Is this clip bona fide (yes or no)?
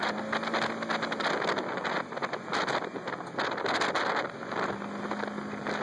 yes